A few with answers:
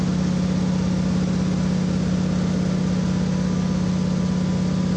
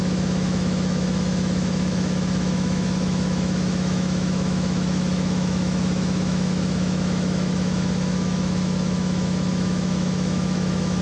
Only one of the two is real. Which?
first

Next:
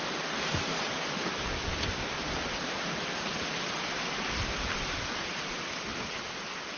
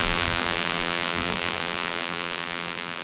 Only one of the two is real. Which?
first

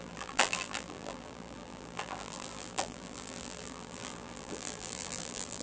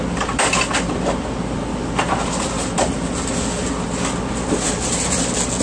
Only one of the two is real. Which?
second